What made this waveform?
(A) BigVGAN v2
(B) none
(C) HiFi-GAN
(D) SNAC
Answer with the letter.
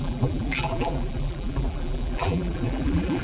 A